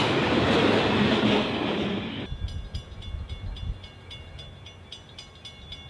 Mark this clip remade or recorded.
recorded